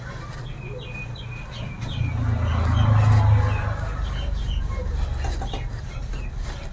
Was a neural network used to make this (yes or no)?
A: no